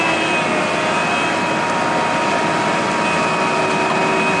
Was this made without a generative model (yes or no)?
yes